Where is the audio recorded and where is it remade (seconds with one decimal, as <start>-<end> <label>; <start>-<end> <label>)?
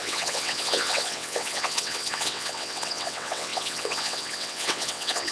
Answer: 0.0-5.3 remade